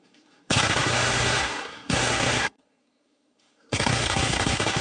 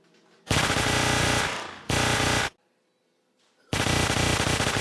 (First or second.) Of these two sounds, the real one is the second